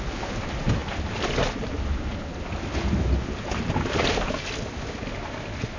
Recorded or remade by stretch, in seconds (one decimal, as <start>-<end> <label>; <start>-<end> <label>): 0.0-5.8 recorded